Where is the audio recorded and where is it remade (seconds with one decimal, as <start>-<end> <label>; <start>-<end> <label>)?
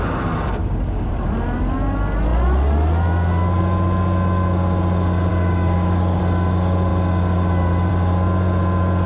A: 0.0-0.6 recorded; 0.6-1.1 remade; 1.1-5.3 recorded; 5.3-6.2 remade; 6.2-9.1 recorded